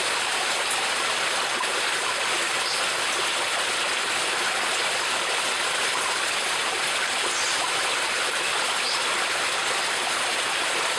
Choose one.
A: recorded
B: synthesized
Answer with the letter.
A